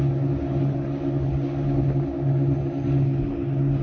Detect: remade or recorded recorded